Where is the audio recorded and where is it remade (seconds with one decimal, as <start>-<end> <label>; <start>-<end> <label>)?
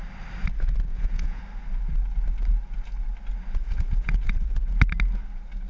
0.0-0.9 recorded; 0.9-1.4 remade; 1.4-3.6 recorded; 3.6-4.8 remade; 4.8-5.7 recorded